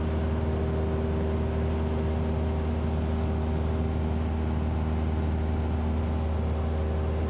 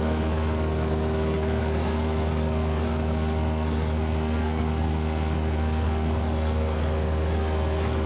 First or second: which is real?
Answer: first